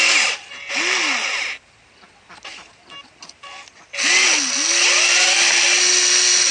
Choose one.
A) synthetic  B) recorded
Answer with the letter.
B